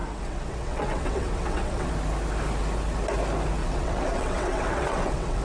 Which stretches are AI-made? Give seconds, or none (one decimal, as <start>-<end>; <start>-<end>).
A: 0.0-1.9; 3.6-5.4